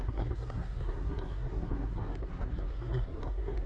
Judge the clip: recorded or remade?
remade